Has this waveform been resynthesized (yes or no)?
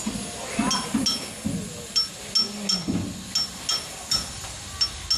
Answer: no